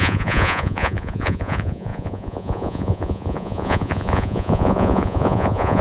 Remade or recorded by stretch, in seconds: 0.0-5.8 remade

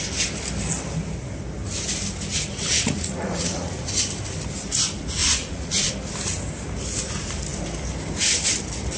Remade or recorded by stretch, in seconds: 0.0-2.3 recorded; 2.3-3.9 remade; 3.9-5.2 recorded; 5.2-5.9 remade; 5.9-9.0 recorded

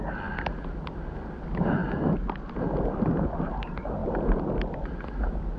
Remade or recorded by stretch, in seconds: 0.0-5.6 recorded

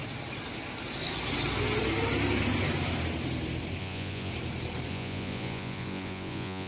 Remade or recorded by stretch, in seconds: 0.0-3.8 recorded; 3.8-4.3 remade; 4.3-4.9 recorded; 4.9-6.7 remade

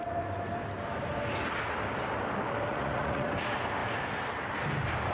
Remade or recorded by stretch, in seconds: 0.0-2.7 recorded; 2.7-3.3 remade; 3.3-5.1 recorded

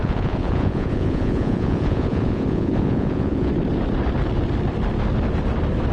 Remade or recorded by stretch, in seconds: 0.0-3.5 remade; 3.5-5.9 recorded

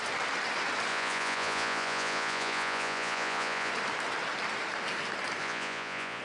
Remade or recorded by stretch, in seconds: 0.0-0.9 recorded; 0.9-3.7 remade; 3.7-5.4 recorded; 5.4-6.2 remade

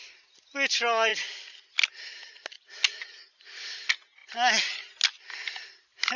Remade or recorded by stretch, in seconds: 0.0-6.2 recorded